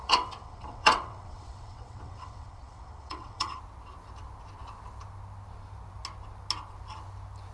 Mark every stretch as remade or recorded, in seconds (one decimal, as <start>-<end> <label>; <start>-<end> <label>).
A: 0.0-3.6 remade; 3.6-7.5 recorded